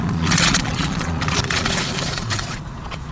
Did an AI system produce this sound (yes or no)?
yes